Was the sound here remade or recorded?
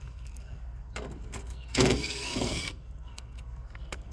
remade